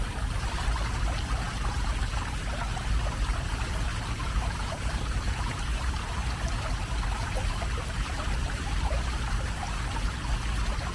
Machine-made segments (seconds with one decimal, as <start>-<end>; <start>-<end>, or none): 4.2-6.2; 7.4-9.8